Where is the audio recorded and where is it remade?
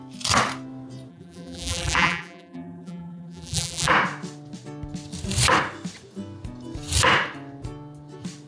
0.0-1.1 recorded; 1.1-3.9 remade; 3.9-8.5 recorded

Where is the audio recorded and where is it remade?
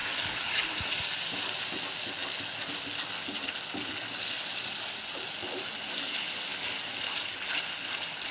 0.0-0.7 remade; 0.7-8.3 recorded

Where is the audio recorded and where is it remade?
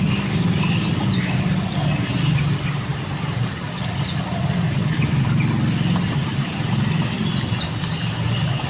0.0-8.7 recorded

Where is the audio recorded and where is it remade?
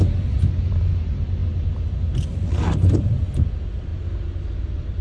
0.0-5.0 recorded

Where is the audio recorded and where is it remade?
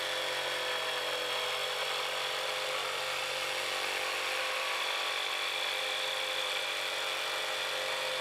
0.0-1.6 recorded; 1.6-3.3 remade; 3.3-4.4 recorded; 4.4-7.5 remade; 7.5-8.2 recorded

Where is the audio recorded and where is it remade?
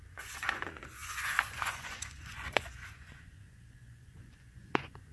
0.0-5.1 remade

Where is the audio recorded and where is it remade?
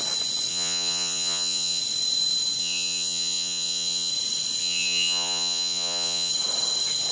0.0-0.5 recorded; 0.5-1.8 remade; 1.8-2.6 recorded; 2.6-4.1 remade; 4.1-4.6 recorded; 4.6-6.3 remade; 6.3-7.1 recorded